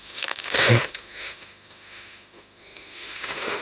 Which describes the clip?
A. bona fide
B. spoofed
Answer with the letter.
B